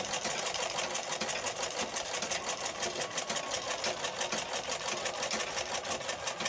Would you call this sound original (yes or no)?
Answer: yes